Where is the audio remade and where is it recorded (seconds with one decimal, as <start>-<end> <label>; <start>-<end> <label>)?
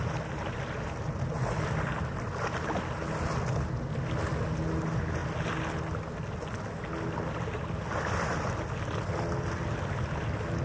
0.0-10.6 recorded